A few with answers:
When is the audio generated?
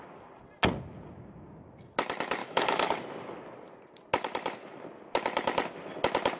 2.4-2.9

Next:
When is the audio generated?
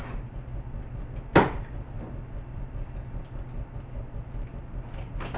none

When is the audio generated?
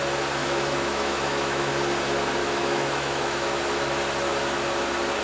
0.4-1.7; 2.4-3.6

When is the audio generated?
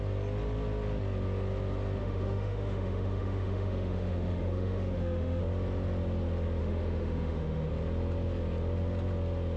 2.0-5.4; 6.6-7.7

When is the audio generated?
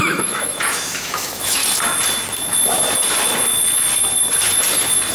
0.0-1.6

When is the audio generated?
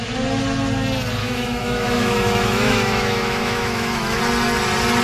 1.2-4.2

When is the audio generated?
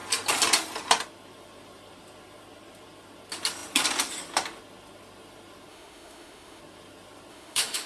5.7-6.6; 7.3-7.9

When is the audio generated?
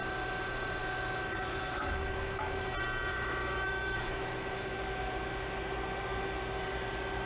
0.8-2.7; 3.1-4.8